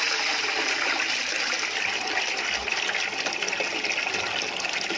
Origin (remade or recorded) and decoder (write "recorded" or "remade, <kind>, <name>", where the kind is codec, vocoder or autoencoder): recorded